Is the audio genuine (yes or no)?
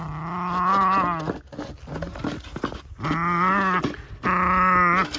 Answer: yes